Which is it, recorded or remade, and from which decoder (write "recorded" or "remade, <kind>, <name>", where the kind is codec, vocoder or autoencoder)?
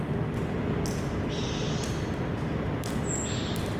recorded